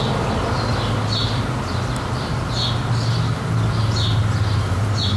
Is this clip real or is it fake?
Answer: real